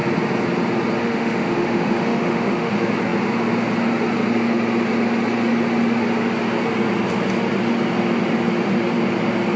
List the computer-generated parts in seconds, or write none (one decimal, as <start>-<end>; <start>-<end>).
1.0-2.7